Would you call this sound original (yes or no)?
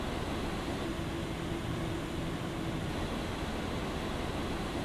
yes